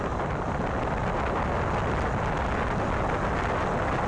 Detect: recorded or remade recorded